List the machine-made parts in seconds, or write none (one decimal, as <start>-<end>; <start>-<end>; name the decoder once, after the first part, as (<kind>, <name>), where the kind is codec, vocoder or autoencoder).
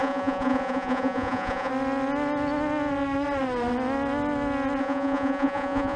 0.0-1.7 (vocoder, Vocos); 4.8-6.0